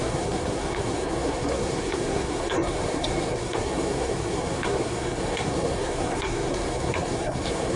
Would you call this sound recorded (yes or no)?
no